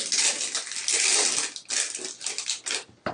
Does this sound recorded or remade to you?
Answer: recorded